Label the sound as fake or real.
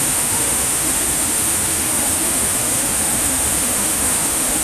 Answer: fake